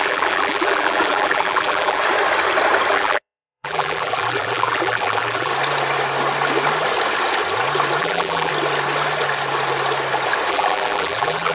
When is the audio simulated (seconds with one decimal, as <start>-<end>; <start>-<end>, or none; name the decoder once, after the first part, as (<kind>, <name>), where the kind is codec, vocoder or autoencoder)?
0.0-2.0 (vocoder, BigVGAN v2); 2.9-5.5; 8.0-8.5; 10.5-11.5